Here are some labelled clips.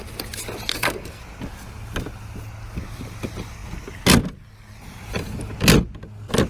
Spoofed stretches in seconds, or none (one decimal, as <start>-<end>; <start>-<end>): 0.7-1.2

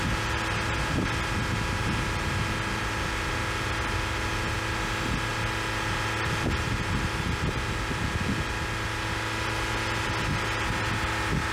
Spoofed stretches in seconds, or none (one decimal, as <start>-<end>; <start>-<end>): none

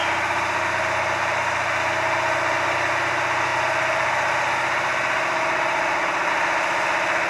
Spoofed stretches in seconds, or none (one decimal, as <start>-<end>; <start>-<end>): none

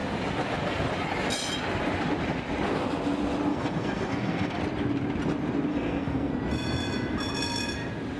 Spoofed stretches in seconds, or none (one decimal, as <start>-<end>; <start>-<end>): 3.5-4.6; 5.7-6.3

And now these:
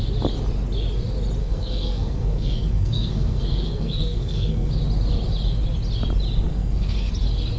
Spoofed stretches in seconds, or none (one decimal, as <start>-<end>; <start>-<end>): 1.4-4.7; 6.5-7.1

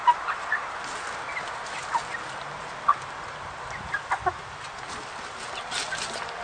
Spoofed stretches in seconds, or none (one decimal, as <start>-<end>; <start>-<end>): none

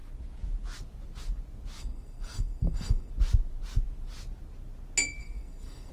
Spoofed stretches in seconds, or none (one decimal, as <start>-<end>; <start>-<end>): 1.8-3.1; 5.2-5.9